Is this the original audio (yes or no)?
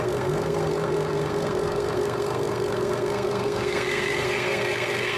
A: no